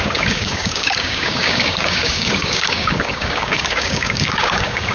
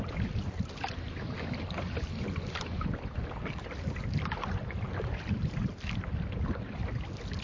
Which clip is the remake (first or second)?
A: first